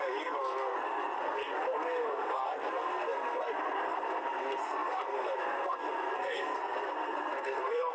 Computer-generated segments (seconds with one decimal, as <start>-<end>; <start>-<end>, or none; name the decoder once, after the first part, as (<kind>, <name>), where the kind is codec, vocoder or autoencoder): 0.0-7.9 (codec, SNAC)